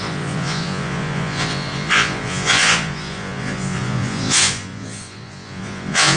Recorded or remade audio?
remade